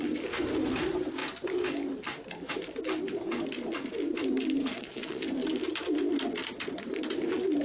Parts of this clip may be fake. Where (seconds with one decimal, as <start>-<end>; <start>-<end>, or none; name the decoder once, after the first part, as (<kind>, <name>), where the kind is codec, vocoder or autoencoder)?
4.6-5.2 (vocoder, Vocos)